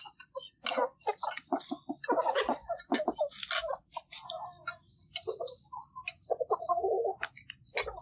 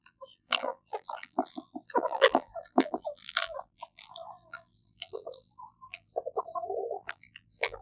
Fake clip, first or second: second